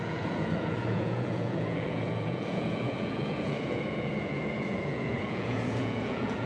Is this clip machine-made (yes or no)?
yes